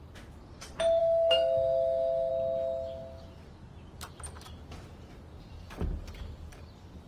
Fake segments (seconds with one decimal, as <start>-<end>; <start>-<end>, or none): 1.0-2.3